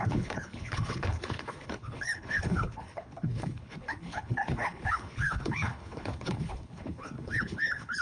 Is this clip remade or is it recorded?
remade